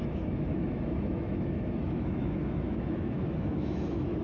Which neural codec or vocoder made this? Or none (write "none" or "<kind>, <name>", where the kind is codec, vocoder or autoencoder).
autoencoder, DAC-VAE